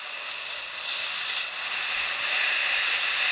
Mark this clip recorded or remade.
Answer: recorded